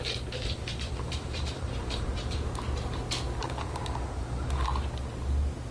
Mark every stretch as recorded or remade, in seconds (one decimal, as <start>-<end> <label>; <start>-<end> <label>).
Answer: 0.0-2.1 remade; 2.1-3.4 recorded; 3.4-4.7 remade; 4.7-5.7 recorded